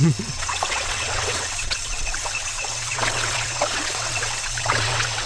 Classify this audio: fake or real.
fake